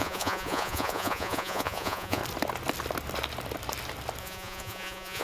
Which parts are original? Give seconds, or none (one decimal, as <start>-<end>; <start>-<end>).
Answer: 2.2-4.2

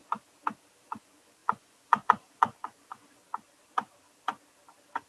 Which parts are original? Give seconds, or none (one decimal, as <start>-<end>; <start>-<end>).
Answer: 0.0-0.9; 3.2-5.1

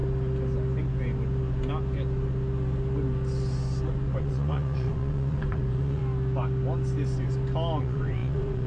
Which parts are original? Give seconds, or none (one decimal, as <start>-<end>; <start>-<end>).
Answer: 0.0-4.2; 6.0-7.8

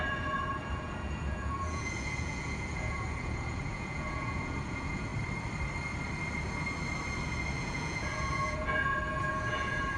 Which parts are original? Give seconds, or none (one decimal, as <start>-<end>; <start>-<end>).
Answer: 5.1-7.6

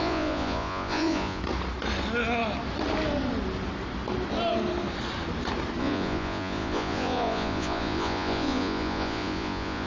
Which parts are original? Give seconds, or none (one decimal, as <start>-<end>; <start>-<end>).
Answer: 1.4-5.8